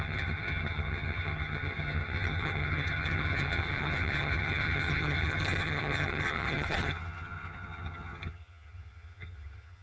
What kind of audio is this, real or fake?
fake